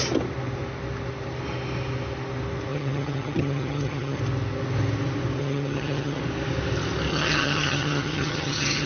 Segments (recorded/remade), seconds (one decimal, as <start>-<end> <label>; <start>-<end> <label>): 0.0-2.7 recorded; 2.7-4.2 remade; 4.2-5.4 recorded; 5.4-6.2 remade; 6.2-7.1 recorded; 7.1-8.9 remade